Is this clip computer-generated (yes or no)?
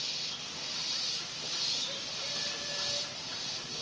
no